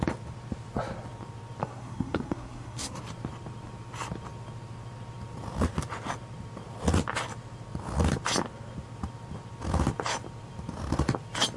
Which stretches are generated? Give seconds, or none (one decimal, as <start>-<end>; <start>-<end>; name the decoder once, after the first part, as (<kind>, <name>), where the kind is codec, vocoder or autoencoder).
1.6-3.0 (codec, SNAC)